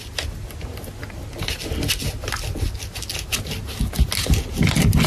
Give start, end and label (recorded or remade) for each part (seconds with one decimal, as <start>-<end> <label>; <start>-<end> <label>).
0.0-5.1 recorded